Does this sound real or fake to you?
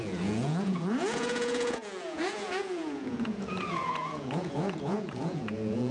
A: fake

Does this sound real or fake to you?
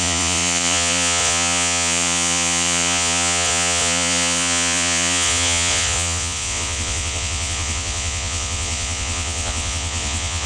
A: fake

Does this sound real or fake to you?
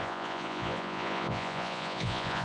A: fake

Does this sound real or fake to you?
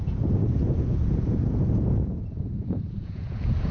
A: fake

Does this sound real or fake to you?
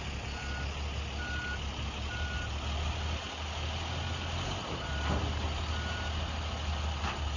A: real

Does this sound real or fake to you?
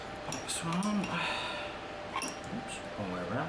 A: real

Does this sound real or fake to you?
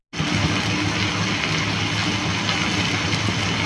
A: real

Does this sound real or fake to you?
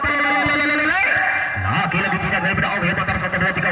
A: real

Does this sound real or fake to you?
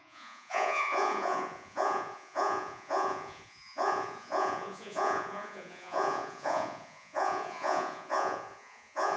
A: fake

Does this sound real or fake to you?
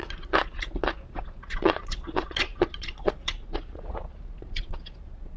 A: fake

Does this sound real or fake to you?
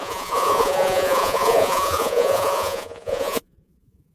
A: fake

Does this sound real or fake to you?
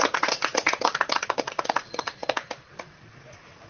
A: fake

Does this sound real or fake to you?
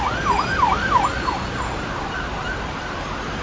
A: real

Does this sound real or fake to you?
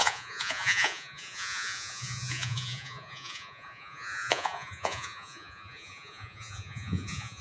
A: fake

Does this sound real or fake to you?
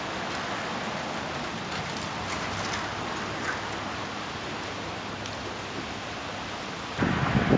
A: real